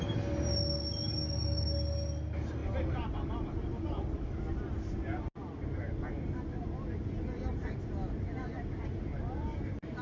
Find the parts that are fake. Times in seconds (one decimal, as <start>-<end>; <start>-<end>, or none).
none